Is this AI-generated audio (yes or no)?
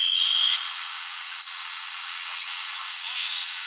yes